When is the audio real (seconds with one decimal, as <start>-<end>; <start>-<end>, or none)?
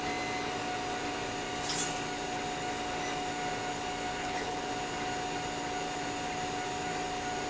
0.0-4.2; 4.7-7.5